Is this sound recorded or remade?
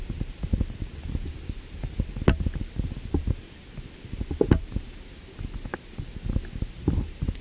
recorded